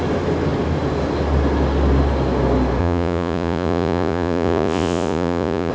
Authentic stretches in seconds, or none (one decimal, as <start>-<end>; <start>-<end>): 0.0-2.8